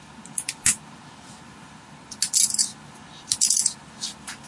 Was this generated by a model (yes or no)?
no